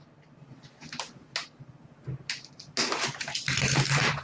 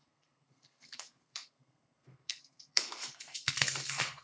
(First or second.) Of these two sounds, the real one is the first